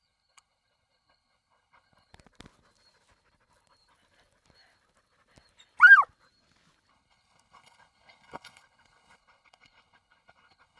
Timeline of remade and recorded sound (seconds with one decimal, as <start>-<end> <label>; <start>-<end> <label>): 0.0-2.1 remade; 2.1-6.9 recorded; 6.9-10.8 remade